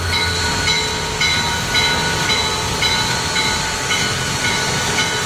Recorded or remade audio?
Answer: recorded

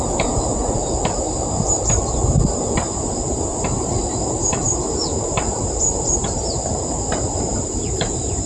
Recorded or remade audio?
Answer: remade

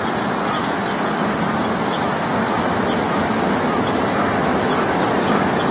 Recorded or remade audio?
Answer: recorded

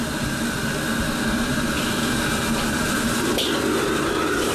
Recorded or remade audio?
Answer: recorded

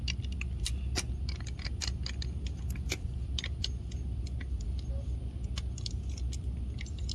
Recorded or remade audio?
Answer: recorded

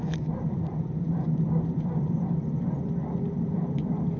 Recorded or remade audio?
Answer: remade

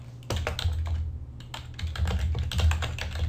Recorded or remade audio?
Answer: recorded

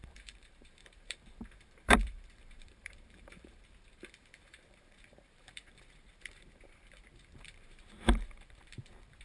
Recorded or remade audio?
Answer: remade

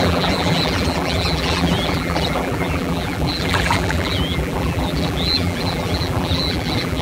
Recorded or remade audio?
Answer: remade